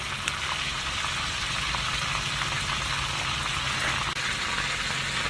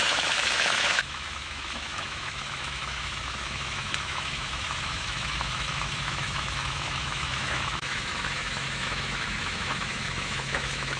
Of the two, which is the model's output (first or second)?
second